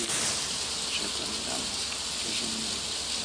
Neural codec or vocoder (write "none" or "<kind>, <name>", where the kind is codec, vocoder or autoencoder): none